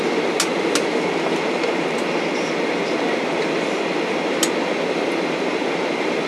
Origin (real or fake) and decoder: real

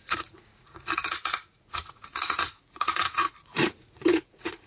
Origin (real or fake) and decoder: fake, vocoder, Vocos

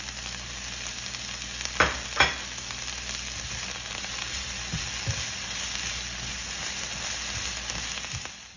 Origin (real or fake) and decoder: real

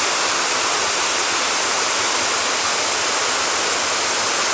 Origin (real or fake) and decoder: real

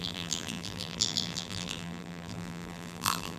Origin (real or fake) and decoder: fake, vocoder, BigVGAN v2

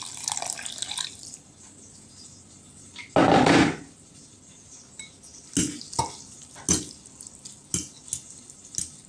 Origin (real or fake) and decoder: real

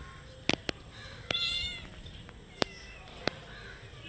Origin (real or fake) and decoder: real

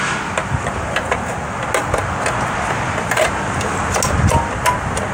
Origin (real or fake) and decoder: real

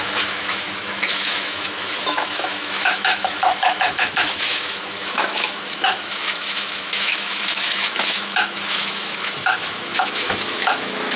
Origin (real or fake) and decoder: fake, autoencoder, DAC-VAE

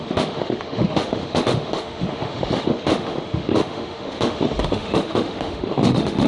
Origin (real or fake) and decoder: fake, autoencoder, DAC-VAE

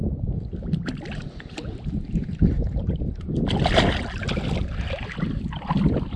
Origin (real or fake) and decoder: real